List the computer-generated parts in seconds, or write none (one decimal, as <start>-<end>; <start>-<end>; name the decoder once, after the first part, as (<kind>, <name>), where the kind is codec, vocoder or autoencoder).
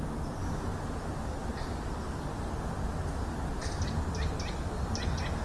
none